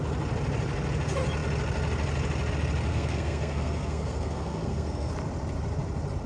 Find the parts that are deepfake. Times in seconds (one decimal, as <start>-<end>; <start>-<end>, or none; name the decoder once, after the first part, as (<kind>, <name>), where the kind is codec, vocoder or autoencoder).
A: 2.9-5.1 (codec, SNAC)